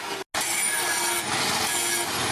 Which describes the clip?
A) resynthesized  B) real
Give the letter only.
B